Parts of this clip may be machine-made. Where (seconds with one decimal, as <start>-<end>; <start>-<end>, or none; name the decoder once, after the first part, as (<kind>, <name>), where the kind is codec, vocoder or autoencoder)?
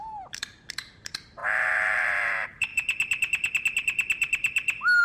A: 0.0-2.7 (vocoder, BigVGAN v2)